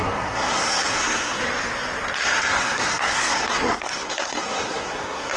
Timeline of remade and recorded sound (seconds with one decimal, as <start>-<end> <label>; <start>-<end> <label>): 0.0-1.4 remade; 1.4-2.2 recorded; 2.2-5.4 remade